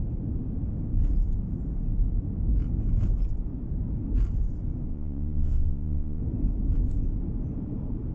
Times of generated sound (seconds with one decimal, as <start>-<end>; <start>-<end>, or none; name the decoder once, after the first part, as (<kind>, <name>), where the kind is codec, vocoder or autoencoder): 4.9-6.2 (vocoder, Vocos)